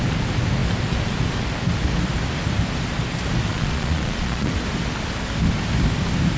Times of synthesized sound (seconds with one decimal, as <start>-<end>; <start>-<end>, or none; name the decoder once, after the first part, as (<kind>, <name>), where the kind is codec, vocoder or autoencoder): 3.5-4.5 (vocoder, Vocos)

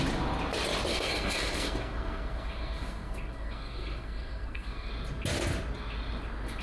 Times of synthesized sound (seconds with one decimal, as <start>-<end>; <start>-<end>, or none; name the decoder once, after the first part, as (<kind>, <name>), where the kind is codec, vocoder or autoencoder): 0.9-4.9 (codec, SNAC)

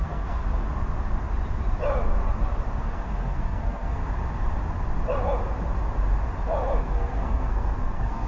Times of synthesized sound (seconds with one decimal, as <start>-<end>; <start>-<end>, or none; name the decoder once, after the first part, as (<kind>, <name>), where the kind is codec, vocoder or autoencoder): 0.0-0.4 (codec, SNAC); 2.8-4.0; 6.8-8.3

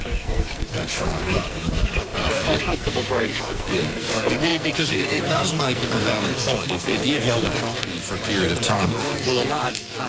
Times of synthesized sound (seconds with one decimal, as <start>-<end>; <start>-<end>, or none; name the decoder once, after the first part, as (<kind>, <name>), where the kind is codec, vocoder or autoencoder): 0.0-8.0 (codec, SNAC); 8.7-10.1